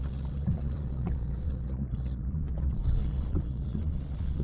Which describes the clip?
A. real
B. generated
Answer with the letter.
B